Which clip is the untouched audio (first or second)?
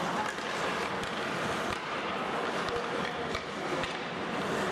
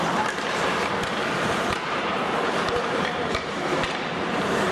first